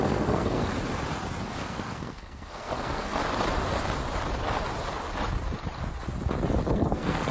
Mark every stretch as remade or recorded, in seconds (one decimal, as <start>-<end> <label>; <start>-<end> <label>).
0.0-0.7 remade; 0.7-1.6 recorded; 1.6-3.2 remade; 3.2-6.7 recorded; 6.7-7.3 remade